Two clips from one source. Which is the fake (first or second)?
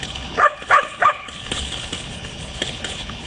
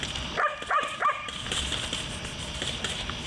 first